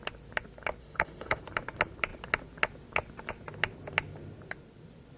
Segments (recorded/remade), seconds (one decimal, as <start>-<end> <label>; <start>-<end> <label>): 0.0-0.8 recorded; 0.8-1.4 remade; 1.4-5.2 recorded